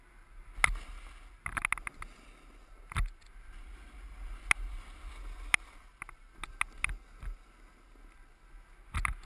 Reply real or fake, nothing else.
real